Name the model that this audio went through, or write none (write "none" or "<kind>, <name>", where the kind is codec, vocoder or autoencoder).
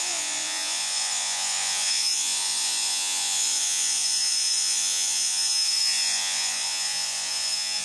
vocoder, Vocos